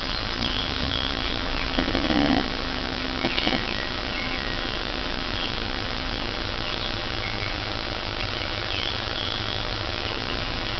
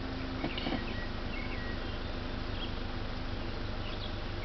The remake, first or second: first